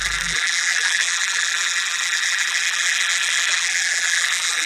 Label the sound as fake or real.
fake